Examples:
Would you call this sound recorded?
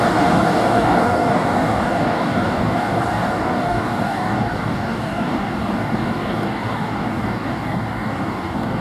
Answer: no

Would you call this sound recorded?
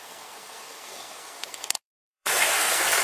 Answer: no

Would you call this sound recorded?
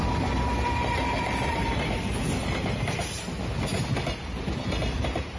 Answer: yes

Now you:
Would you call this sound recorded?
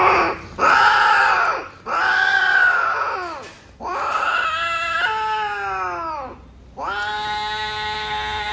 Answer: yes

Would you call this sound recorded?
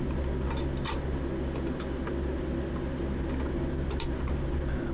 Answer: yes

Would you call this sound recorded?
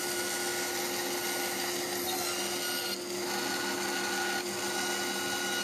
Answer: yes